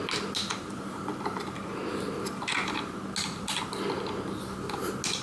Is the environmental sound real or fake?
real